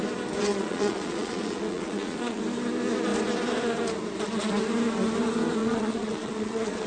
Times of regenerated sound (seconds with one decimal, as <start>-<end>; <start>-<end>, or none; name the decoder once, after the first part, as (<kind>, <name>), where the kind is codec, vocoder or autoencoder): 0.5-2.4 (vocoder, Vocos); 5.6-6.9